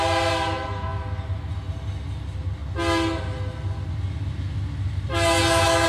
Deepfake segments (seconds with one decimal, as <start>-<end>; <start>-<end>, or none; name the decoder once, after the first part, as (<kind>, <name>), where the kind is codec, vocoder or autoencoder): none